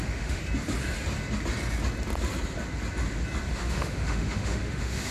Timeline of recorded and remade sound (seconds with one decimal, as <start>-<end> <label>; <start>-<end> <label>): 0.0-0.4 remade; 0.4-3.5 recorded; 3.5-5.1 remade